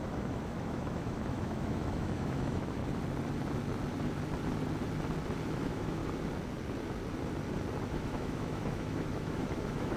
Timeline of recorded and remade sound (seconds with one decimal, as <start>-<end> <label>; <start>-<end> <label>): 0.0-2.8 remade; 2.8-5.5 recorded; 5.5-6.0 remade; 6.0-7.9 recorded; 7.9-10.0 remade